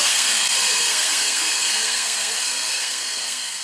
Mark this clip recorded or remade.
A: remade